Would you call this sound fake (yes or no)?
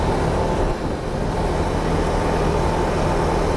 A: no